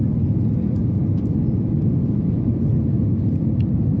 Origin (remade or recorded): recorded